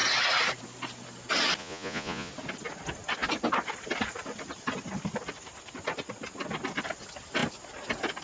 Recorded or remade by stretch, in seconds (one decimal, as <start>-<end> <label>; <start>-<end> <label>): 0.0-1.6 recorded; 1.6-2.3 remade; 2.3-8.2 recorded